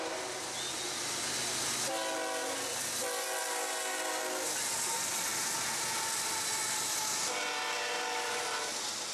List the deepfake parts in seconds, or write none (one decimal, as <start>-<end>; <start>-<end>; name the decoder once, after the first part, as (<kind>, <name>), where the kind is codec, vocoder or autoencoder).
none